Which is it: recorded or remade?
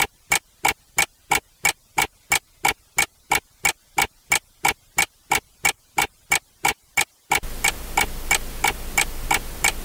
recorded